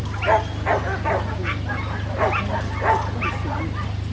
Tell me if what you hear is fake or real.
real